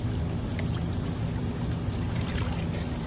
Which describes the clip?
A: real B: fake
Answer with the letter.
A